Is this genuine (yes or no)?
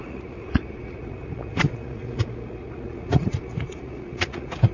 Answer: no